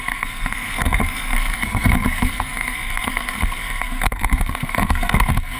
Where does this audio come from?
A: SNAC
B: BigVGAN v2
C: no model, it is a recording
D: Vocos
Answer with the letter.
A